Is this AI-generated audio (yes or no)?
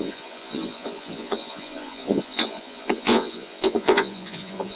yes